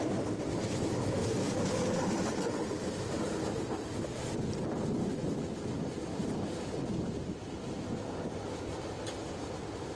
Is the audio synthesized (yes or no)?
no